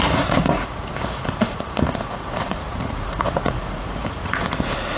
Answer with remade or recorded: remade